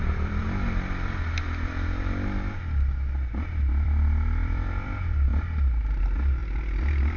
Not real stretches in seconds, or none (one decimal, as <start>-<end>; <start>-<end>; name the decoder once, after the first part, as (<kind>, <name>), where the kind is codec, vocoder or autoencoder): 0.0-0.4 (vocoder, BigVGAN v2); 3.7-5.3; 6.0-6.4